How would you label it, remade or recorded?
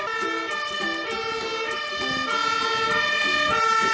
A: recorded